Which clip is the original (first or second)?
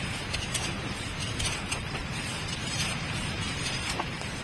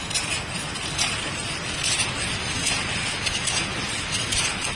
second